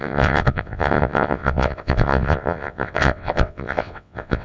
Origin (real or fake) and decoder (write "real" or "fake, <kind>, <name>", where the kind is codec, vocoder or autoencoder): fake, vocoder, WaveNeXt